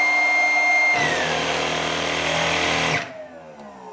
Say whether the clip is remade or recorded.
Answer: recorded